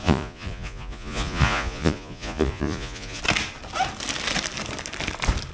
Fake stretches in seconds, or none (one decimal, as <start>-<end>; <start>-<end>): 0.0-3.2